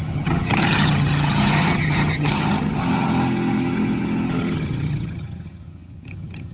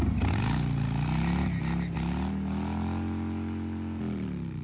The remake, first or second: first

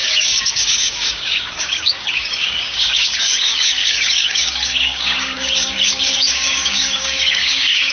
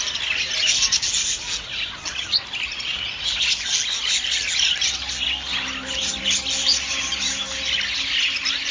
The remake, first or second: first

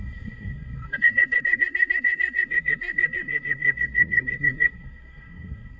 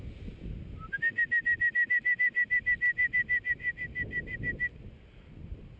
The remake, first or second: first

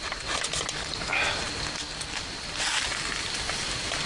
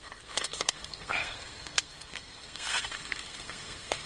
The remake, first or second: second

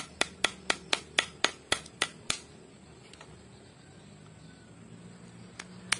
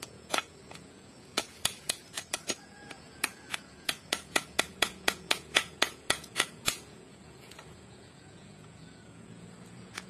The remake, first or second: second